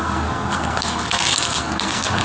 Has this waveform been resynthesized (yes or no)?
yes